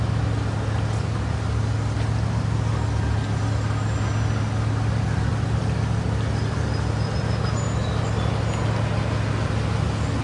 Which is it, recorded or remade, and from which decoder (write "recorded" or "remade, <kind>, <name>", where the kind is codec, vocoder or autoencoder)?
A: recorded